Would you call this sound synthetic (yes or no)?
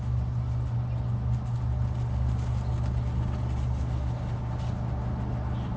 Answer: no